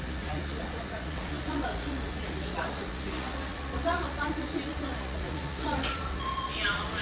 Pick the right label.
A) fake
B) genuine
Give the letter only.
A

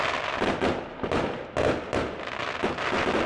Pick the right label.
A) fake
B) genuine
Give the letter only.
B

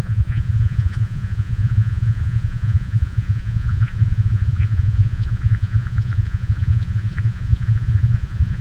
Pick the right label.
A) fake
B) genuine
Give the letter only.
A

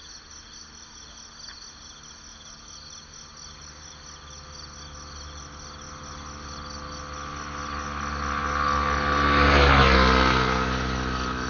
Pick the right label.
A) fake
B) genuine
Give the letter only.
B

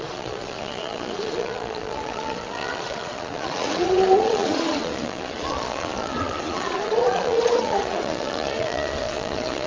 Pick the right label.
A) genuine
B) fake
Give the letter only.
B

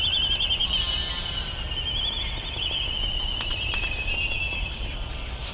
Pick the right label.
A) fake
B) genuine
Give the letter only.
B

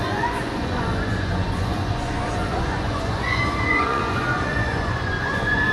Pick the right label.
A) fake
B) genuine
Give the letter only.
A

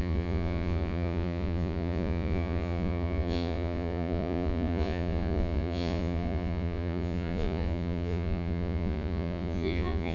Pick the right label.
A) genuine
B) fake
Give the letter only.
B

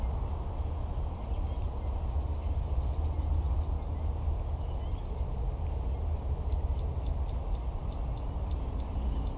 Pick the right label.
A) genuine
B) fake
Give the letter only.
A